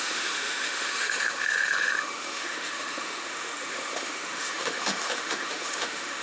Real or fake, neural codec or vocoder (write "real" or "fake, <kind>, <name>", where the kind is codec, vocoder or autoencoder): fake, autoencoder, DAC-VAE